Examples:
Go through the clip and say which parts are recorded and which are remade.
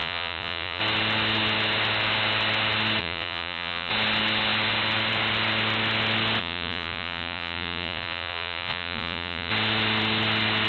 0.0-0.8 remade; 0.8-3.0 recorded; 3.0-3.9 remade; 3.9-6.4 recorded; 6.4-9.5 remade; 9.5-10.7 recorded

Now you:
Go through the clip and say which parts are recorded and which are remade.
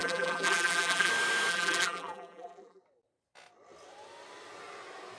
0.0-1.1 remade; 1.1-1.5 recorded; 1.5-2.8 remade; 2.8-5.2 recorded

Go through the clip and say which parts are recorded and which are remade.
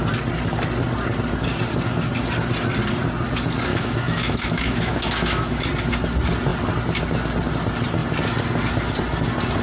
0.0-3.7 recorded; 3.7-5.6 remade; 5.6-9.6 recorded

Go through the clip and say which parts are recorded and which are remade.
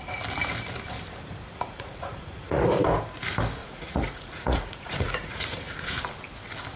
0.0-1.7 recorded; 1.7-2.6 remade; 2.6-3.6 recorded; 3.6-6.0 remade; 6.0-6.8 recorded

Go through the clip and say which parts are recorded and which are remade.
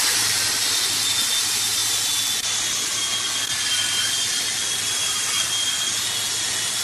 0.0-6.8 recorded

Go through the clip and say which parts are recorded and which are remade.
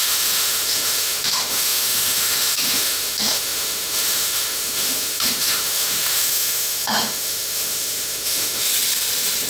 0.0-8.7 remade; 8.7-9.5 recorded